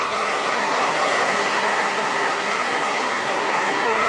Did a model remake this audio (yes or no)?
yes